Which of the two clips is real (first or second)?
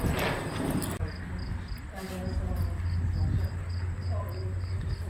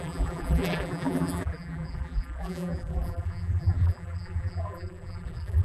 first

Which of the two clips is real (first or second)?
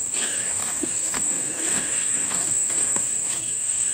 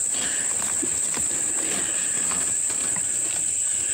second